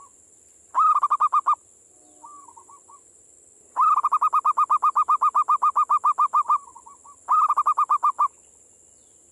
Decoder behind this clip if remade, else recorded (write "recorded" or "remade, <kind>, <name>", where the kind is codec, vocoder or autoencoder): recorded